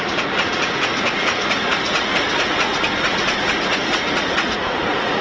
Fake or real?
fake